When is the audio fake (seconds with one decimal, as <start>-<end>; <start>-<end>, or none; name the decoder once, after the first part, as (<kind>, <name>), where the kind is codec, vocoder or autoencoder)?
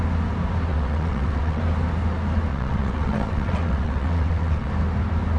0.7-1.6 (vocoder, WaveNeXt); 2.5-4.7